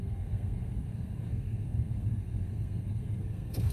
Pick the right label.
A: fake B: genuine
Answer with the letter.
A